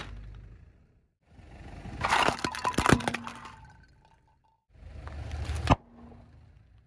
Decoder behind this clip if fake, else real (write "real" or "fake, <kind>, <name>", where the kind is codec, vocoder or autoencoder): real